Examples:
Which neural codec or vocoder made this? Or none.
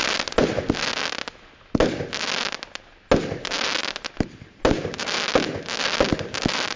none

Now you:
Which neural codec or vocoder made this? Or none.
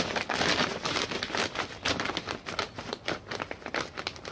none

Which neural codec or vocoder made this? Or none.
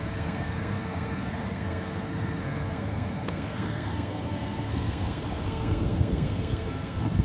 codec, SNAC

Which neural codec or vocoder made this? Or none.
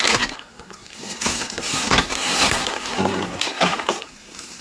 codec, SNAC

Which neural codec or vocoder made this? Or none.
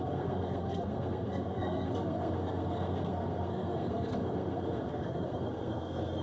codec, SNAC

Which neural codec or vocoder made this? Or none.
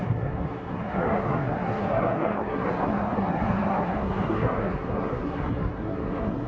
codec, SNAC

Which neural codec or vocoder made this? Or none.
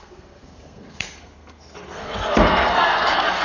codec, SNAC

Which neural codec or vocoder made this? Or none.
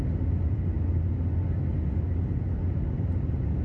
none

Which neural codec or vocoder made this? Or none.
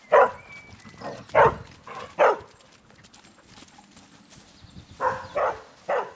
none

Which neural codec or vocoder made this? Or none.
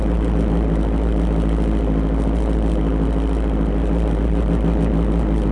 none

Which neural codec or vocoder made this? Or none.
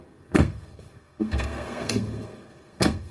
codec, SNAC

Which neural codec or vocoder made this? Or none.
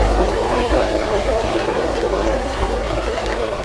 codec, SNAC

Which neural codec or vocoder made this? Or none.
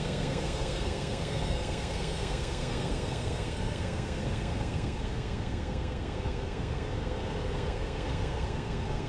codec, SNAC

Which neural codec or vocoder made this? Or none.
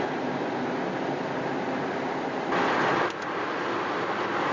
none